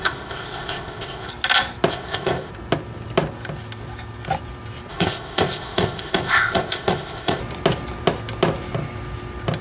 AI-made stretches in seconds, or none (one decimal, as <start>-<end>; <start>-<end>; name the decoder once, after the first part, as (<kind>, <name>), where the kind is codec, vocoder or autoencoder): 0.0-1.3 (codec, ZipCodec); 1.9-2.5; 4.9-7.4